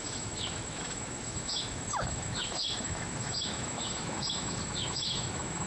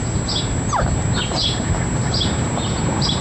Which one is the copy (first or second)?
first